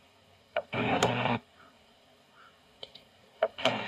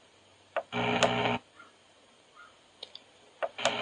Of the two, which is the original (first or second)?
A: second